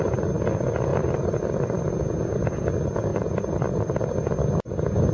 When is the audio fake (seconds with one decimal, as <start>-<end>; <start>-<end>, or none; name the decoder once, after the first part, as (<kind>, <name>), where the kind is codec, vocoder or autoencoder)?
0.9-1.8 (vocoder, BigVGAN v2); 3.1-4.1